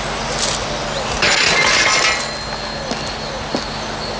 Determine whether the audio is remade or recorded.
recorded